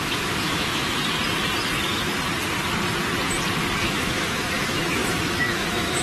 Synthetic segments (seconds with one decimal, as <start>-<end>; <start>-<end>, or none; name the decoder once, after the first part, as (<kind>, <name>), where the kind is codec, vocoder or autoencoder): 0.0-1.0 (autoencoder, DAC-VAE); 3.8-6.0